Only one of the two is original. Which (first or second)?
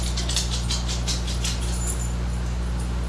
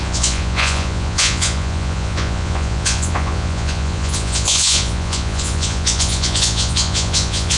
first